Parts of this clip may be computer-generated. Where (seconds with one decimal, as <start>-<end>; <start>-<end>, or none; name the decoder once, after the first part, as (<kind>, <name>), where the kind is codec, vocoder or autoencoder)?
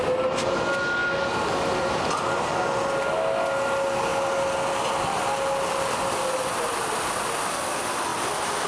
1.0-2.0 (vocoder, BigVGAN v2)